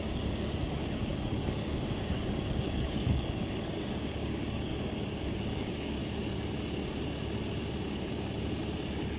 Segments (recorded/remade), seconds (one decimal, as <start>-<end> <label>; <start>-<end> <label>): 0.0-6.0 remade; 6.0-9.2 recorded